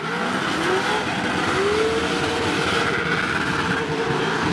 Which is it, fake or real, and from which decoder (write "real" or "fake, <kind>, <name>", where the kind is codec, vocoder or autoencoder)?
real